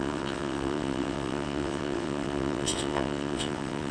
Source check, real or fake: fake